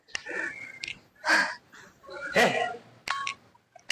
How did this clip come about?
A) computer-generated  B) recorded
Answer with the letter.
B